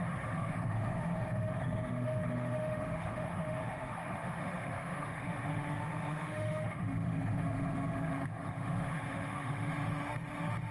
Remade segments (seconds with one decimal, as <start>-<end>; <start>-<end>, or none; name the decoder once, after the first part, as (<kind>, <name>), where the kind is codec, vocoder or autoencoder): 0.0-10.7 (autoencoder, DAC-VAE)